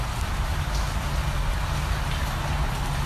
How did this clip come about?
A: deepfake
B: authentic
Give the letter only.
B